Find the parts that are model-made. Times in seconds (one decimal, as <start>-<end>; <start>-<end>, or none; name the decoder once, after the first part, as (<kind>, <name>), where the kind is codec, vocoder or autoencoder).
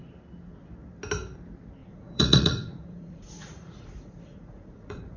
1.8-5.2 (vocoder, Vocos)